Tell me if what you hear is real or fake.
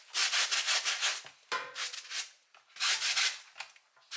real